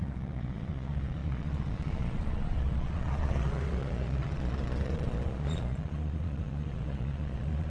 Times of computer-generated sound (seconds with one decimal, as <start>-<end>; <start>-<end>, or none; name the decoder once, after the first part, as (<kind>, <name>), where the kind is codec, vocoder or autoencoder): 0.0-7.7 (vocoder, Vocos)